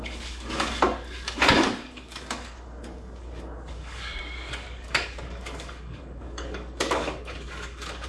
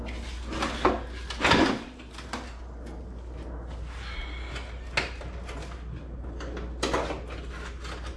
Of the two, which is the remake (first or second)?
first